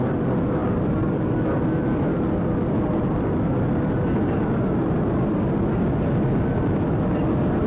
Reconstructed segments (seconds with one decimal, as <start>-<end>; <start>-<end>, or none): none